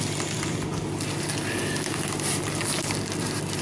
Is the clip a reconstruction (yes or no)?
no